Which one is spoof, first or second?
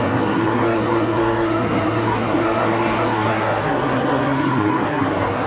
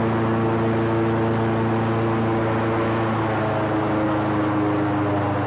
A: first